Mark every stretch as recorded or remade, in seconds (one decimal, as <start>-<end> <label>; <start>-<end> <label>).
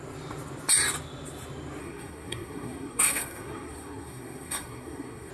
0.0-1.8 recorded; 1.8-5.3 remade